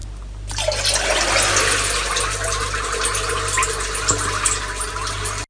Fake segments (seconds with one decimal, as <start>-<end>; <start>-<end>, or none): none